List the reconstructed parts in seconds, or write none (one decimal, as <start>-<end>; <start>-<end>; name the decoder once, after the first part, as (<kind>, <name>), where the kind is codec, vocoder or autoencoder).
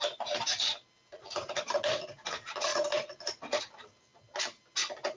none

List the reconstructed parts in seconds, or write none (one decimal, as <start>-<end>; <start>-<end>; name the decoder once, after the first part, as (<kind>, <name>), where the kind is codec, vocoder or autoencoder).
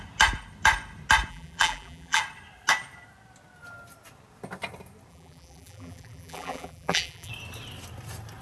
1.3-2.2 (vocoder, BigVGAN v2); 5.1-7.3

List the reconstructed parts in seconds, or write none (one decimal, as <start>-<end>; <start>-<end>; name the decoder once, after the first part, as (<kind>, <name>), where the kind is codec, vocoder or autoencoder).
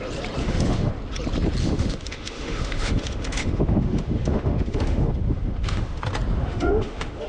0.4-0.9 (autoencoder, DAC-VAE); 1.6-6.0; 6.4-7.3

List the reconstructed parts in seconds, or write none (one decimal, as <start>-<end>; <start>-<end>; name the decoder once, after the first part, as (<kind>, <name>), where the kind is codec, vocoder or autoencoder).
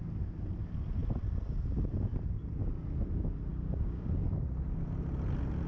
3.5-4.1 (codec, DAC)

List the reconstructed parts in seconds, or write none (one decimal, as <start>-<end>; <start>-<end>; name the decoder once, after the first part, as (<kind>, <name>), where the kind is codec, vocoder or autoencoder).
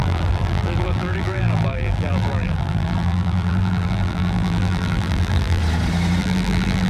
0.0-5.6 (vocoder, BigVGAN v2); 6.2-6.9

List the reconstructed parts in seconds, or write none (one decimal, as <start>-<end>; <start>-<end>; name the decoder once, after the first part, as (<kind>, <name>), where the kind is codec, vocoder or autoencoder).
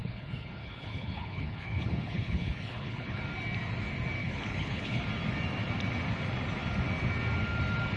0.0-3.2 (codec, HILCodec); 4.2-5.0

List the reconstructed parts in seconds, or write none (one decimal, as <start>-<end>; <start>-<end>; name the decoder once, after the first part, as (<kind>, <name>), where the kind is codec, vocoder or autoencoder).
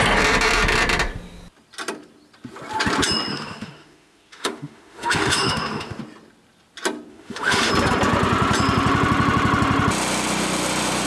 3.3-6.0 (autoencoder, DAC-VAE); 7.1-7.7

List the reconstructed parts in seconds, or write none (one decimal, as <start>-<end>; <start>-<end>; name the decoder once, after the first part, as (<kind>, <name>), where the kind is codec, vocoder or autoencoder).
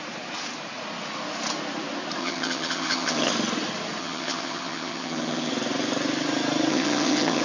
2.2-3.3 (vocoder, HiFi-GAN); 4.0-5.5; 6.7-7.4